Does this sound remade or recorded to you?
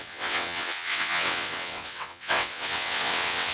remade